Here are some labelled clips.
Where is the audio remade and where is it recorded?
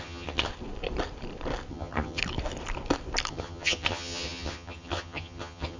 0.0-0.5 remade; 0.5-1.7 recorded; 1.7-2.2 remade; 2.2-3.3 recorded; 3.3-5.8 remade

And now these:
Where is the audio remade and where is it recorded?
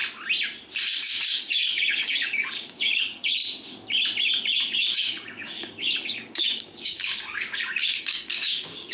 0.0-0.8 recorded; 0.8-3.3 remade; 3.3-4.7 recorded; 4.7-8.9 remade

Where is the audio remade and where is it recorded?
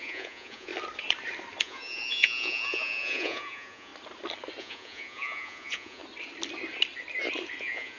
0.0-0.7 remade; 0.7-1.6 recorded; 1.6-3.9 remade; 3.9-4.6 recorded; 4.6-6.0 remade; 6.0-7.6 recorded; 7.6-8.0 remade